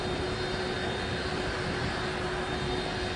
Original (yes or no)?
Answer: yes